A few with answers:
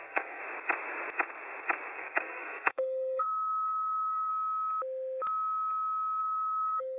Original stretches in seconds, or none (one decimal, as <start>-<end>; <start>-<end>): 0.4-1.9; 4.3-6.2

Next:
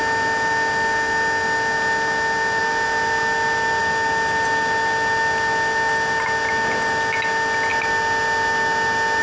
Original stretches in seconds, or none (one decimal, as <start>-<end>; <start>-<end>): 0.0-9.2

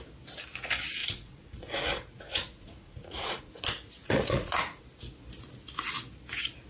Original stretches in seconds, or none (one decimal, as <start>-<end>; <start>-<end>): 0.0-1.0; 4.8-6.7

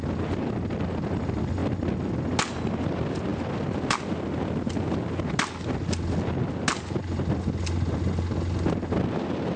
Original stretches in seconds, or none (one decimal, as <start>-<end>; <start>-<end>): 0.0-9.6